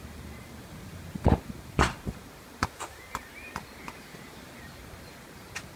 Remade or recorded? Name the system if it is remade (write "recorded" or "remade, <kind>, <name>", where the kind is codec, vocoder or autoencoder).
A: remade, vocoder, BigVGAN v2